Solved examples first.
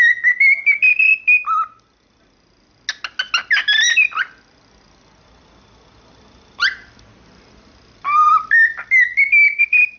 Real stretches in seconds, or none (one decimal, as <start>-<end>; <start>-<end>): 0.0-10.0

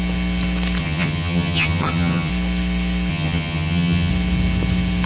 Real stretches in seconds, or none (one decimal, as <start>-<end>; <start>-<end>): 0.0-0.8; 2.3-3.1; 4.1-5.1

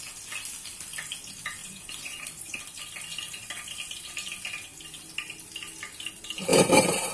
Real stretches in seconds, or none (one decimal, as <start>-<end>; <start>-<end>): 0.0-1.6; 2.6-6.5

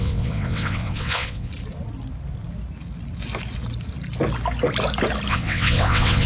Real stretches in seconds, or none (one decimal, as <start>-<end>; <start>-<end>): 1.5-5.3

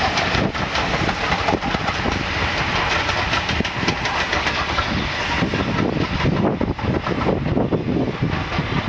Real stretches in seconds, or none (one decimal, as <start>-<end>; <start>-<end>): 0.0-4.3; 5.0-8.9